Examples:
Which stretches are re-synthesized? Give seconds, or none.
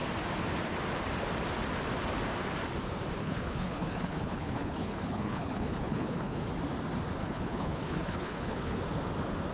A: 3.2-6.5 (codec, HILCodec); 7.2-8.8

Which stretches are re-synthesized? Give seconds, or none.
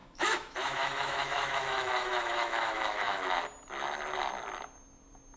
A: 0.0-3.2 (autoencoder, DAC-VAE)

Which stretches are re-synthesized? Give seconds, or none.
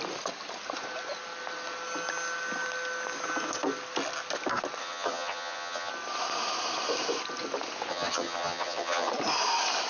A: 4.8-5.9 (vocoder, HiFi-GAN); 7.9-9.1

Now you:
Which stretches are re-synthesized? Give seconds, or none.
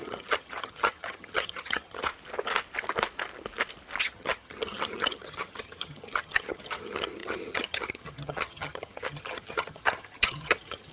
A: 0.0-2.1 (vocoder, HiFi-GAN); 4.0-10.9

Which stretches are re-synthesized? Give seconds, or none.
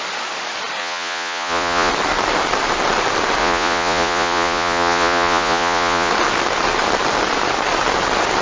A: 0.8-1.9 (vocoder, Vocos); 3.4-6.1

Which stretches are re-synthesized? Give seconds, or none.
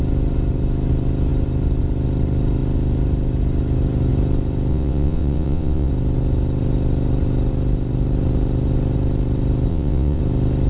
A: 4.7-5.9 (vocoder, WaveNeXt); 9.7-10.2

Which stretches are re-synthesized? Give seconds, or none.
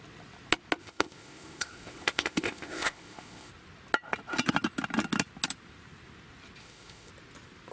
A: 0.8-3.5 (codec, ZipCodec); 6.6-7.1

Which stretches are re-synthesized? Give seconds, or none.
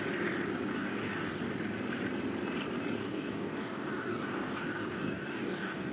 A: 0.7-1.4 (codec, DAC); 3.0-5.9